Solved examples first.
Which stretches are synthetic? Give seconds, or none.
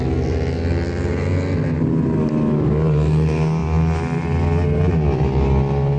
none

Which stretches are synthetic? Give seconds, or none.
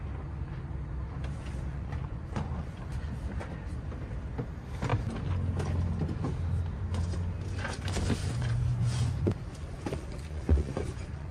1.7-3.1 (vocoder, Vocos); 8.2-11.3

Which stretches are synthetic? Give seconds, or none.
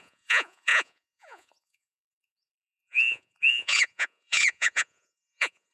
0.0-5.7 (vocoder, Vocos)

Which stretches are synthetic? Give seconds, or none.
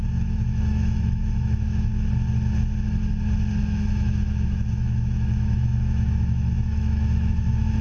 0.0-1.9 (autoencoder, DAC-VAE); 3.6-7.8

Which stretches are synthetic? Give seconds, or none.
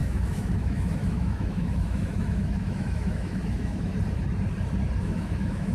0.0-3.9 (autoencoder, DAC-VAE); 5.0-5.7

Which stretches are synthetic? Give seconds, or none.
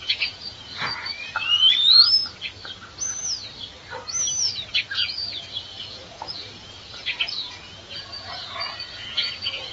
0.0-2.0 (vocoder, Vocos); 4.9-9.7